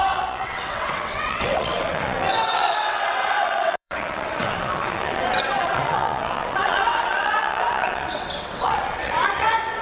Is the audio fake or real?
fake